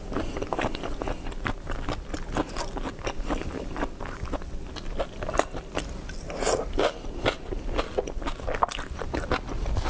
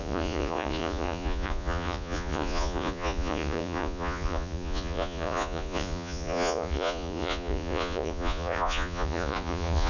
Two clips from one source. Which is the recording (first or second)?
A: first